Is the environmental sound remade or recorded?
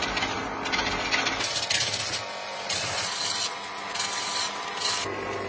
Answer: recorded